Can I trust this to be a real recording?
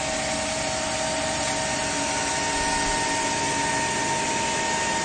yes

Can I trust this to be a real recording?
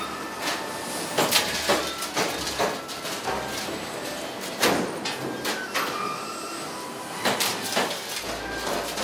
yes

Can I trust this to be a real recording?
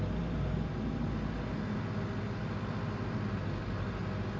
yes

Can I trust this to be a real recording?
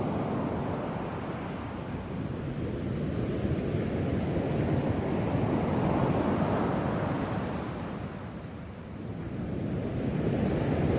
yes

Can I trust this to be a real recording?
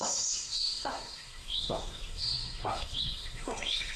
no